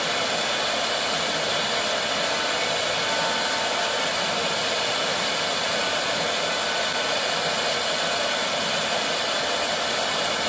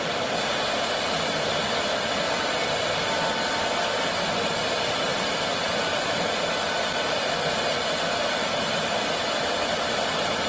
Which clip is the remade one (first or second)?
second